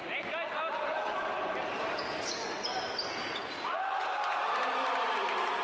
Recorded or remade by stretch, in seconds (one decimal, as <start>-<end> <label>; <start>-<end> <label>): 0.0-5.6 recorded